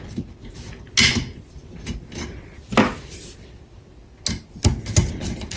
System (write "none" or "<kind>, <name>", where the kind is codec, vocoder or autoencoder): none